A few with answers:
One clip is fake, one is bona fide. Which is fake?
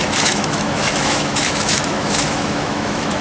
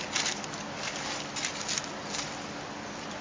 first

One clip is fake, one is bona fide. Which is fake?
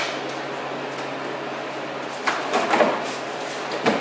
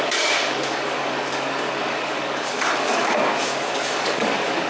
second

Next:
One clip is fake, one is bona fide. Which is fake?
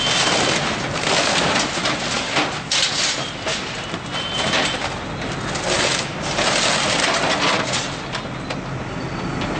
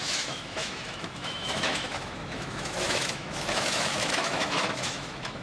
second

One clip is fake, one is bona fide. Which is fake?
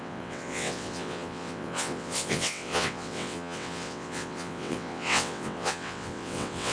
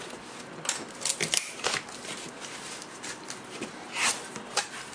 first